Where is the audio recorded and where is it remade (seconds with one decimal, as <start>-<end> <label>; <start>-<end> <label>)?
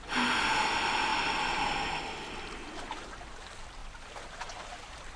0.0-5.2 recorded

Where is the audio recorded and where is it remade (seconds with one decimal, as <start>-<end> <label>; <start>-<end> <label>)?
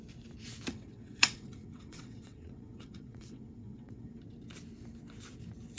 0.0-0.7 recorded; 0.7-4.2 remade; 4.2-5.8 recorded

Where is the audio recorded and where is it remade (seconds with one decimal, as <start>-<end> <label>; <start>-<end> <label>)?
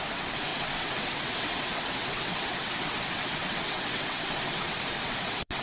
0.0-5.6 remade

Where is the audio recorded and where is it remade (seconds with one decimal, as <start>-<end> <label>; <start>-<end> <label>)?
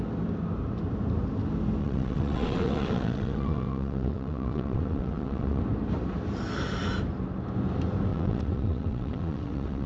0.0-1.8 recorded; 1.8-5.6 remade; 5.6-8.1 recorded; 8.1-9.9 remade